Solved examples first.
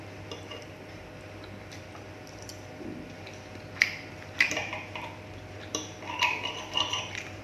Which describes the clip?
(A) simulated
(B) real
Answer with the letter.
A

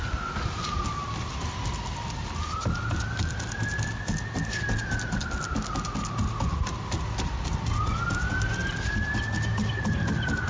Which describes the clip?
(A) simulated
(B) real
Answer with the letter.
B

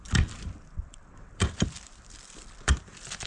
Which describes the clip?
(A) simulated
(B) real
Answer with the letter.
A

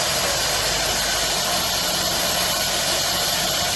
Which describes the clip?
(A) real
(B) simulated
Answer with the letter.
A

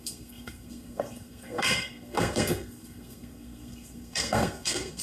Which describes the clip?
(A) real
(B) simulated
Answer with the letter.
B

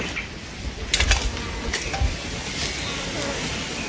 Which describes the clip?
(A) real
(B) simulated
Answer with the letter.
A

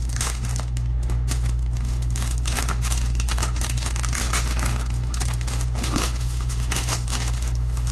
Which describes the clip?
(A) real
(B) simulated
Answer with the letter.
B